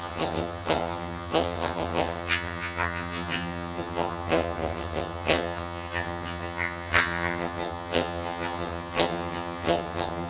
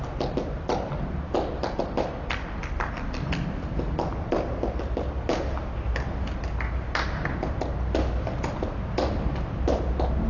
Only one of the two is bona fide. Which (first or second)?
second